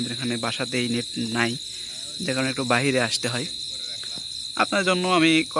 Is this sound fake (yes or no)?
no